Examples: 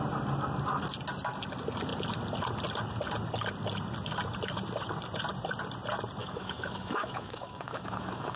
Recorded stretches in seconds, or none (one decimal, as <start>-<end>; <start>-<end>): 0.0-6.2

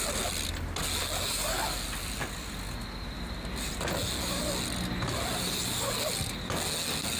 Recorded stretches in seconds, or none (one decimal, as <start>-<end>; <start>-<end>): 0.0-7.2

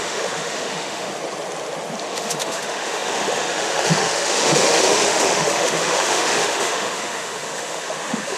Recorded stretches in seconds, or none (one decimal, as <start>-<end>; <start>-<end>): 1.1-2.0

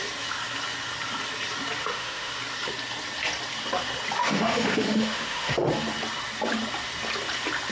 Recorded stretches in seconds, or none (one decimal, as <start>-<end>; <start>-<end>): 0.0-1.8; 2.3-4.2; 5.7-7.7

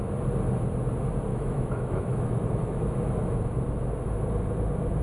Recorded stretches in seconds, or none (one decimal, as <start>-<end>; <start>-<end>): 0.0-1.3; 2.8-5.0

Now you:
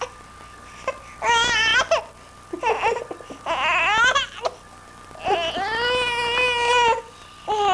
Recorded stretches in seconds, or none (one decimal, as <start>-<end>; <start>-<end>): 0.0-7.7

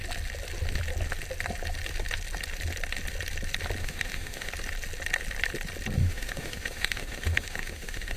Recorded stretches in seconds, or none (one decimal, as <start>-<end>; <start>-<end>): 0.0-3.8; 4.5-6.0

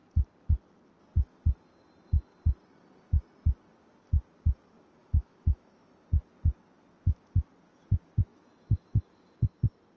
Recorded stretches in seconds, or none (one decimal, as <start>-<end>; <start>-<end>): 0.0-5.0; 5.9-8.3; 9.6-10.0